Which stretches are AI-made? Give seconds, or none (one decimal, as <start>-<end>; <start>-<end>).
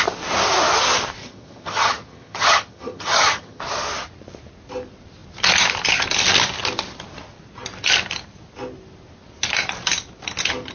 1.2-3.6